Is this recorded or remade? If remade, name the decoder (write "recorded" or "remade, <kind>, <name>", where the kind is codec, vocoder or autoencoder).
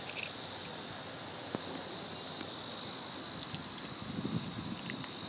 recorded